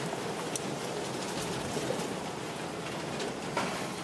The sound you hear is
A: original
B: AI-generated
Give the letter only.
A